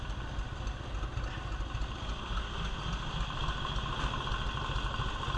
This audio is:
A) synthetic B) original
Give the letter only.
B